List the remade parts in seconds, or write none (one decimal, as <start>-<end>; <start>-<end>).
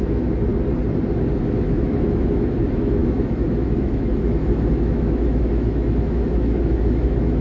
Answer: 0.0-0.5; 1.4-7.4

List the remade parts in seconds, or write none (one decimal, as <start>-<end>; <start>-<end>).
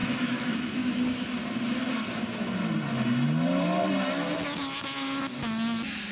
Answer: 0.0-1.0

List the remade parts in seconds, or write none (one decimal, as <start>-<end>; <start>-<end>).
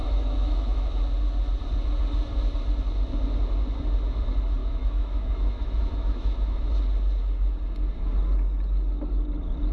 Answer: 0.0-1.0; 4.6-6.7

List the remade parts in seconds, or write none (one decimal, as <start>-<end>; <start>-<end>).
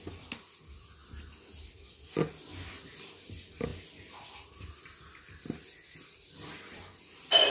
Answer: none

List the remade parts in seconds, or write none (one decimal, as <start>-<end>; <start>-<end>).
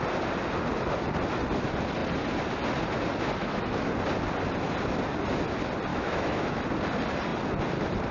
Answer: 3.4-3.9; 5.9-6.6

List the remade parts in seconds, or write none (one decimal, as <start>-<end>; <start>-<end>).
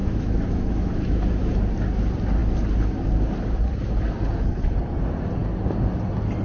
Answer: 0.0-1.5